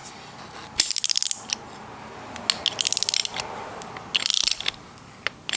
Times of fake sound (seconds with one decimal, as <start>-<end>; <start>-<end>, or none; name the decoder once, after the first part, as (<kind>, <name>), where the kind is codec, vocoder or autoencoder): none